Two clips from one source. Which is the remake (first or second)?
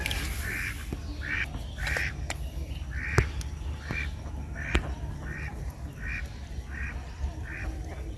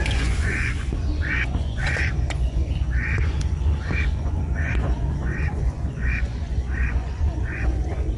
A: second